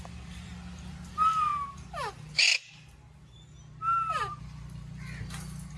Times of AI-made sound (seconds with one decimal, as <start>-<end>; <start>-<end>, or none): 0.0-0.5; 1.1-1.5; 2.1-2.5; 4.1-5.8